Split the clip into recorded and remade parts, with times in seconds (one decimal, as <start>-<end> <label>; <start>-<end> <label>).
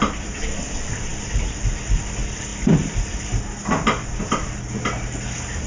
0.0-2.5 recorded; 2.5-3.4 remade; 3.4-5.7 recorded